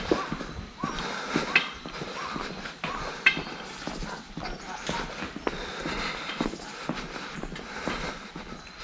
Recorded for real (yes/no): yes